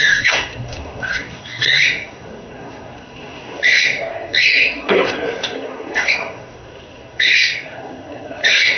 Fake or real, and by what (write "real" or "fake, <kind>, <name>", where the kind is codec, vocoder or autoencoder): fake, codec, SNAC